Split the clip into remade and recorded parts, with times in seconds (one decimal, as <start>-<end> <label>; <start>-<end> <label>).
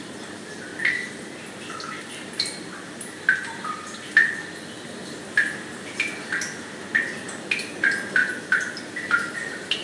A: 0.0-9.8 recorded